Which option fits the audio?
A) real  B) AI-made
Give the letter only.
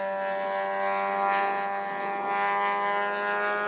A